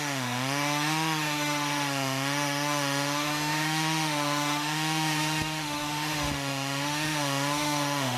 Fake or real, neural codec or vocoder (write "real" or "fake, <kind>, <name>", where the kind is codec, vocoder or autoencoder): fake, autoencoder, DAC-VAE